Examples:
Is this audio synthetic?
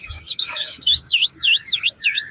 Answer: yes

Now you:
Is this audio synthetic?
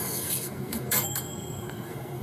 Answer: yes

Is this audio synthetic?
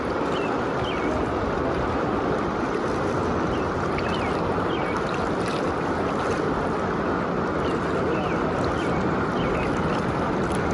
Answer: no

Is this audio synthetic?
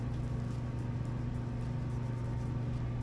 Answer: no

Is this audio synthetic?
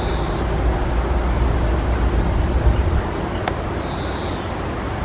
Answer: no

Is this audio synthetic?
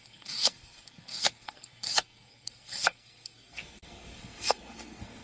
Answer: yes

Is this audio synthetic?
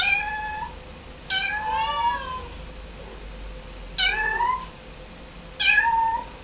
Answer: no